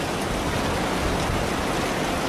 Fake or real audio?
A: real